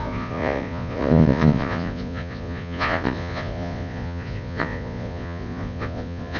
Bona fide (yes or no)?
no